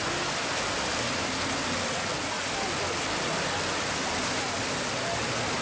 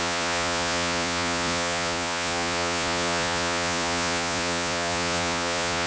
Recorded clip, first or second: first